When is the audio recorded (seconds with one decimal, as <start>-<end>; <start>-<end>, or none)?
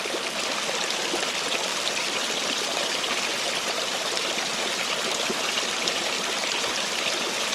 0.0-7.5